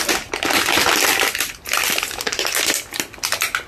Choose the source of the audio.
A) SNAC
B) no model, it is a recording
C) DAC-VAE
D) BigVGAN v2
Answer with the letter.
B